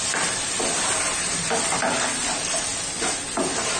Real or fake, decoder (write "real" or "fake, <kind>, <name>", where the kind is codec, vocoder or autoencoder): real